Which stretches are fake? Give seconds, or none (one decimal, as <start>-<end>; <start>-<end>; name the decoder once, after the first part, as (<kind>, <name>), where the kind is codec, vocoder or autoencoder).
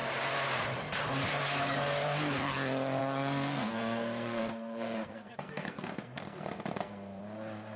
3.0-7.2 (codec, SNAC)